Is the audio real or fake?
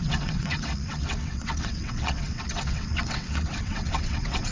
fake